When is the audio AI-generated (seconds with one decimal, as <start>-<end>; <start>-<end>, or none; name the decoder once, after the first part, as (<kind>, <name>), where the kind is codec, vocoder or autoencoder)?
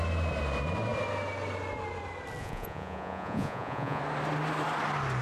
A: 2.4-4.0 (vocoder, Vocos)